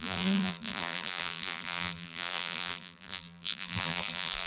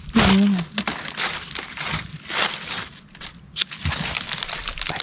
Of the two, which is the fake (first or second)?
first